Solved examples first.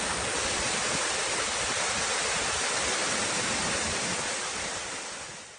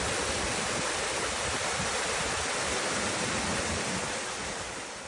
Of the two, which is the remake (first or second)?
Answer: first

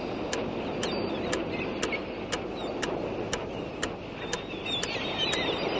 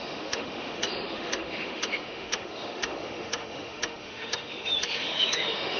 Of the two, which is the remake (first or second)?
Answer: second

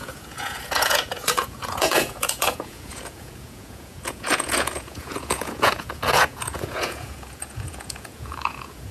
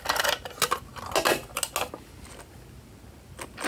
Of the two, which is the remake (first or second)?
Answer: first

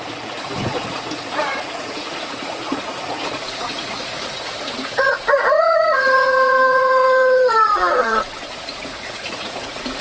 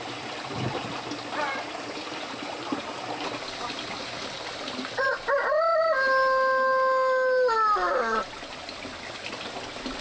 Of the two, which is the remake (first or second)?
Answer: first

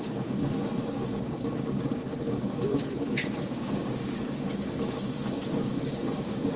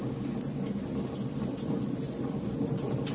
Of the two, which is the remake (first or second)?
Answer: first